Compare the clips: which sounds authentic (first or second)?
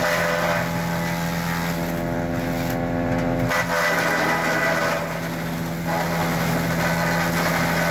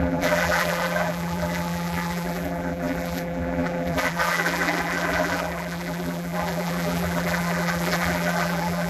first